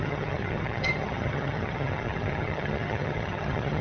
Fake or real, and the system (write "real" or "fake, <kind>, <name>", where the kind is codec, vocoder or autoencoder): fake, vocoder, HiFi-GAN